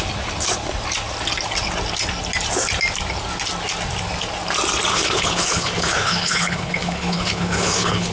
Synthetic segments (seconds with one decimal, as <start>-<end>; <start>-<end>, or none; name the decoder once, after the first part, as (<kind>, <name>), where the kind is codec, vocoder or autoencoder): 4.9-8.1 (codec, HILCodec)